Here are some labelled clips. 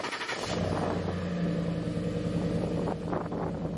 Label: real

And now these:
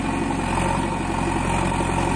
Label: real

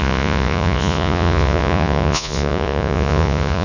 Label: fake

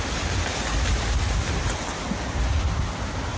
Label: real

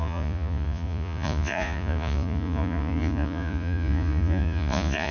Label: fake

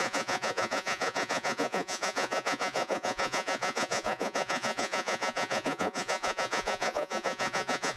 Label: fake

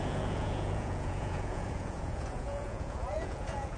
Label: fake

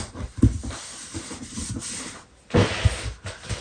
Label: real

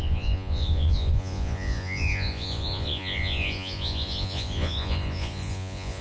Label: fake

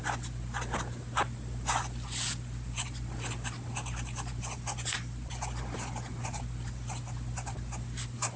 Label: real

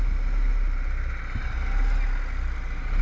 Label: real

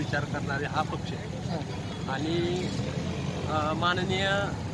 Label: real